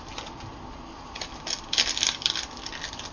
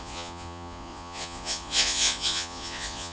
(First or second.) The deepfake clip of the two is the second